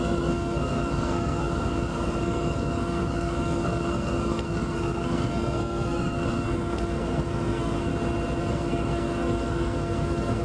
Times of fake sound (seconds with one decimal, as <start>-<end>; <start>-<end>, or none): 0.0-7.9; 8.4-10.4